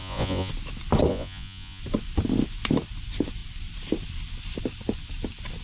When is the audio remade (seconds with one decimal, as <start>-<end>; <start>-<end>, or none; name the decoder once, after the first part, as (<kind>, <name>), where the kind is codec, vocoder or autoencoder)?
0.0-0.5 (vocoder, Vocos); 1.1-1.8